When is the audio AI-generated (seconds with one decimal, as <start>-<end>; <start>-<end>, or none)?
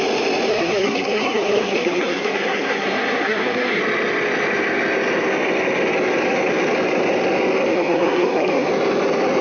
0.5-3.8; 7.7-8.7